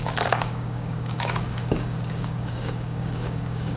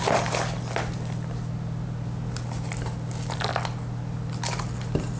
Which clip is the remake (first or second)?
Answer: first